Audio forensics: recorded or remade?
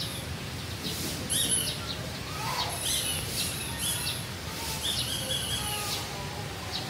recorded